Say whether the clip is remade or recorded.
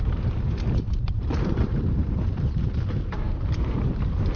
remade